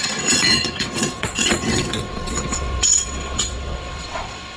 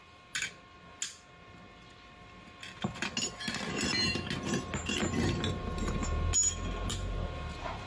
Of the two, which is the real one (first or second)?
second